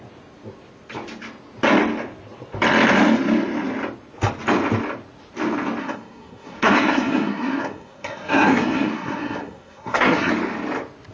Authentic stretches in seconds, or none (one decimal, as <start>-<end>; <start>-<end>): 0.0-5.8; 10.3-11.1